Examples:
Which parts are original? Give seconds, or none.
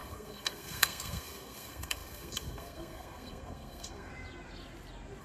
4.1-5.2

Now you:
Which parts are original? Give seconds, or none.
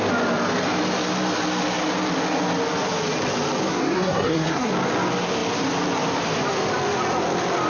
0.0-3.7; 4.7-7.7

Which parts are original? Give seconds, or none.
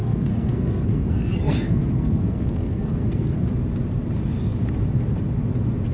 3.5-5.9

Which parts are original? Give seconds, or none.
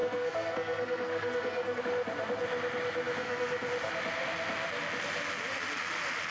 1.8-3.2; 3.7-6.3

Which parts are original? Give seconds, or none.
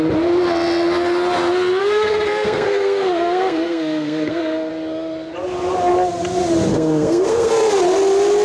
0.0-1.8; 4.7-6.7; 7.5-8.4